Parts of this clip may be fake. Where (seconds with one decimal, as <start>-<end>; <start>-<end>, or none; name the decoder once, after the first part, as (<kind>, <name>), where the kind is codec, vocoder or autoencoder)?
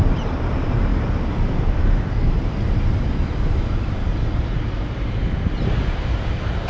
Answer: 0.0-6.7 (vocoder, BigVGAN v2)